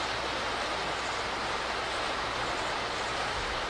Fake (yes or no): no